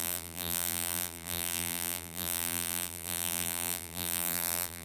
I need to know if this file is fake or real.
fake